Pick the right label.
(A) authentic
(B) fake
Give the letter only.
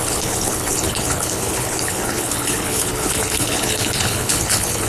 B